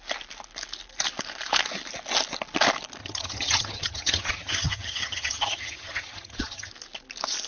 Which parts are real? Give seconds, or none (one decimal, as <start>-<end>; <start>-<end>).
0.0-3.0; 6.7-7.5